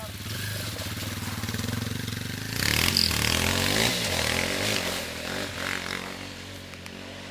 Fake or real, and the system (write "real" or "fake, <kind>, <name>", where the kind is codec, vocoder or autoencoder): real